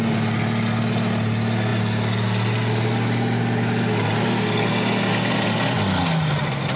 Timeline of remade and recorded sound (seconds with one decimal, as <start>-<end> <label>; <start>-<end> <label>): 0.0-6.8 recorded